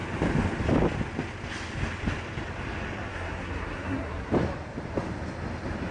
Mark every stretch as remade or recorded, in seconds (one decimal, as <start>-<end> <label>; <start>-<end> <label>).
0.0-3.1 recorded; 3.1-4.3 remade; 4.3-5.9 recorded